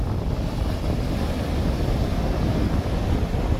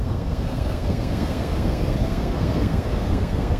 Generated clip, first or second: second